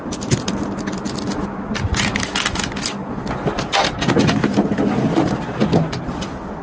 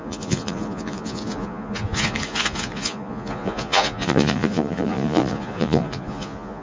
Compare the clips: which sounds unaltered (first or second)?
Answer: first